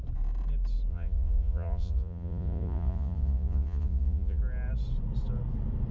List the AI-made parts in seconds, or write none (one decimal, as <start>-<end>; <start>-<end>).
0.9-4.4